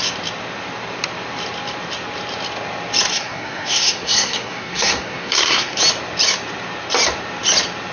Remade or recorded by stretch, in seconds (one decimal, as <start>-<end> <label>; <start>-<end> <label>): 0.0-3.1 recorded; 3.1-5.8 remade; 5.8-7.9 recorded